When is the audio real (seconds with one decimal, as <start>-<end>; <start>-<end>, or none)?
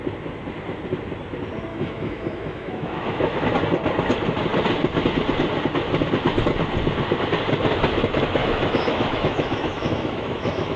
0.0-1.7; 3.5-8.4